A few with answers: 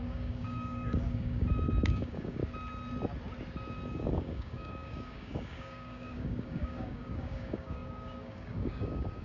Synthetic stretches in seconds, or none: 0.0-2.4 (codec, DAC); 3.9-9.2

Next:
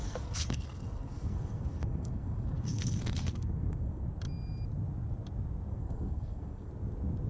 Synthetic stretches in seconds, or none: 0.0-4.0 (codec, SNAC); 5.7-6.7

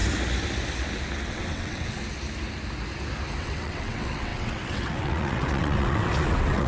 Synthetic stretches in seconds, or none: 1.3-2.0 (vocoder, WaveNeXt); 3.4-6.7

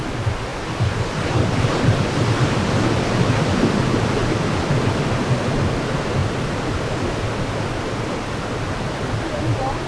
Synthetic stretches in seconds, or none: none

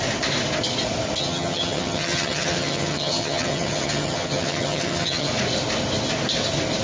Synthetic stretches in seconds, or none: 1.2-5.3 (vocoder, HiFi-GAN)

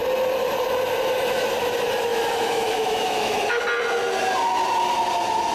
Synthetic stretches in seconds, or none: 2.1-3.6 (autoencoder, DAC-VAE)